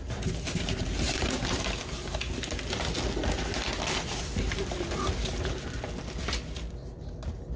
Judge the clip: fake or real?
real